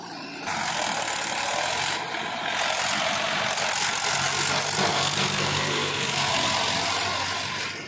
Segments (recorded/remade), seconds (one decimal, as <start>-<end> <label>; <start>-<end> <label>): 0.0-4.9 recorded; 4.9-6.3 remade; 6.3-7.9 recorded